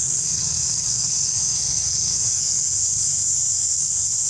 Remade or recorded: remade